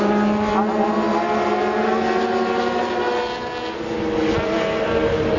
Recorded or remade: recorded